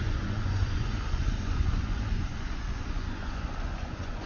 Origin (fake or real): fake